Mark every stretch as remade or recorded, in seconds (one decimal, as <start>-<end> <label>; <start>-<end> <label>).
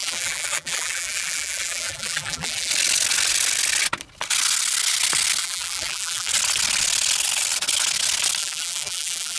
0.0-2.7 remade; 2.7-5.4 recorded; 5.4-6.3 remade; 6.3-8.4 recorded; 8.4-9.4 remade